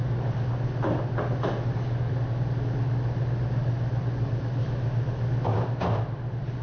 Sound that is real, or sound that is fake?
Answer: real